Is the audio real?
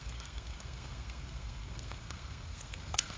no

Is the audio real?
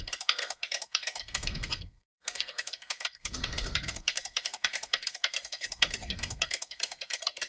no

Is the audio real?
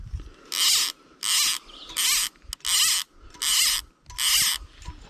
yes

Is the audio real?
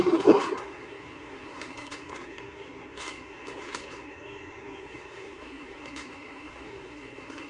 no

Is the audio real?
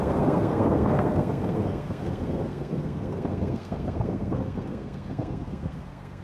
no